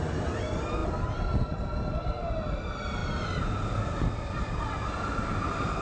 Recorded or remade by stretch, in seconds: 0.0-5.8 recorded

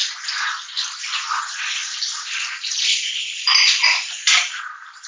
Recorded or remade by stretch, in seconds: 0.0-1.8 recorded; 1.8-5.1 remade

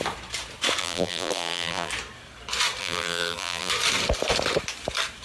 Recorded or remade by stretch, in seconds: 0.0-0.8 recorded; 0.8-1.9 remade; 1.9-2.8 recorded; 2.8-3.7 remade; 3.7-5.2 recorded